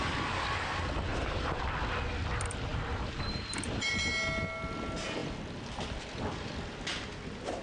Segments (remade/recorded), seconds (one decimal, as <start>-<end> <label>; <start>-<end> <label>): 0.0-1.1 recorded; 1.1-1.6 remade; 1.6-2.7 recorded; 2.7-3.9 remade; 3.9-7.6 recorded